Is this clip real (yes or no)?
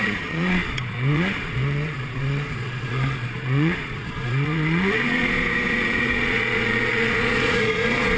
no